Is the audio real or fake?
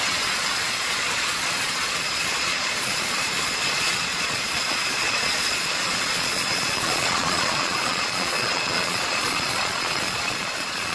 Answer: fake